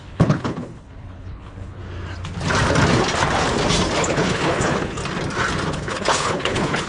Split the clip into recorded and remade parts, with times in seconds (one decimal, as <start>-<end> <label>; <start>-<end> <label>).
0.0-1.8 remade; 1.8-4.0 recorded; 4.0-5.0 remade; 5.0-5.7 recorded; 5.7-6.9 remade